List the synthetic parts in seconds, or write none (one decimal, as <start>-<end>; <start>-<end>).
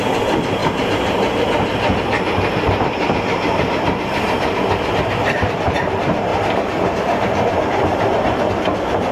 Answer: 0.6-5.5; 6.3-8.5